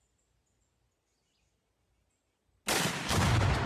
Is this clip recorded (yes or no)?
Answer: yes